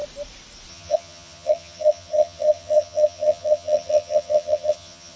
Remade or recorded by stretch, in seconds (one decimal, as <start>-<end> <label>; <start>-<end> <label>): 0.0-0.7 recorded; 0.7-5.2 remade

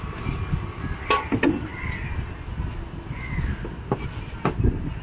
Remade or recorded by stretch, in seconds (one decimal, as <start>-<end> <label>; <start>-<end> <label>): 0.0-5.0 recorded

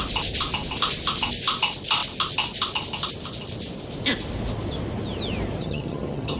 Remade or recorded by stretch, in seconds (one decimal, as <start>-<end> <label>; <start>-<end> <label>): 0.0-5.6 recorded; 5.6-6.4 remade

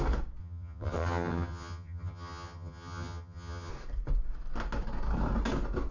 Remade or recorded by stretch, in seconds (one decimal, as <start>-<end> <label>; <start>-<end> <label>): 0.0-0.4 recorded; 0.4-3.7 remade; 3.7-5.9 recorded

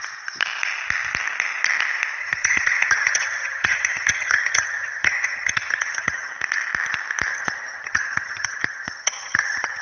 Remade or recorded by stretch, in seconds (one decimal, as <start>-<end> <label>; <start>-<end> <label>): 0.0-2.2 recorded; 2.2-6.3 remade; 6.3-7.3 recorded; 7.3-9.8 remade

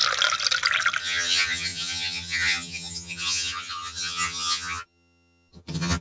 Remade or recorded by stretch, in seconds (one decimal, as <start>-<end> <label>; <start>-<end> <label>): 0.0-1.0 recorded; 1.0-6.0 remade

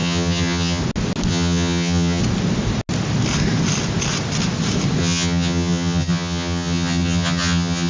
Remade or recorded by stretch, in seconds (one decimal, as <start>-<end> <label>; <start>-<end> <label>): 0.0-0.8 remade; 0.8-1.3 recorded; 1.3-2.2 remade; 2.2-5.0 recorded; 5.0-7.9 remade

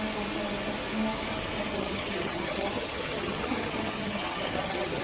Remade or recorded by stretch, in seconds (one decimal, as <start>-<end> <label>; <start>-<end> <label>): 0.0-1.7 recorded; 1.7-5.0 remade